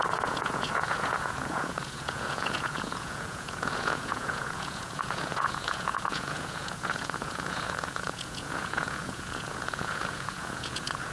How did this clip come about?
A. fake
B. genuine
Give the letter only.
A